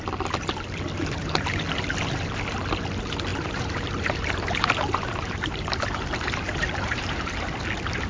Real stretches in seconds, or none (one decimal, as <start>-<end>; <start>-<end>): 0.0-1.0; 1.6-3.3; 7.3-8.1

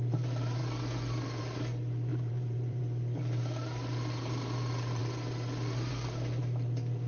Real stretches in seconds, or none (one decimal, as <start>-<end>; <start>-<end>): 0.0-2.1; 2.8-7.1

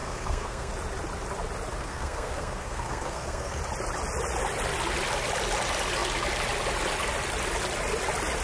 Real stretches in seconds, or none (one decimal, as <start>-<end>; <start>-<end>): 0.7-1.8; 3.6-8.4

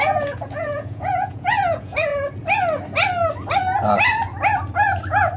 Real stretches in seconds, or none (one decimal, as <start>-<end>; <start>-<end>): 2.1-5.4